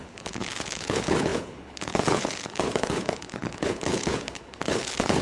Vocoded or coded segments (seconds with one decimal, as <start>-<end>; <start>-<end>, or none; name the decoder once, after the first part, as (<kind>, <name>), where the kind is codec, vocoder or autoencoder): 0.0-5.2 (codec, HILCodec)